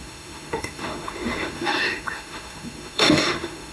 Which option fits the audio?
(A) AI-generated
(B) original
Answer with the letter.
A